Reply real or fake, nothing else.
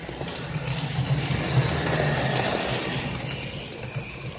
real